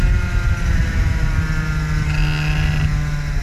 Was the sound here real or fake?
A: real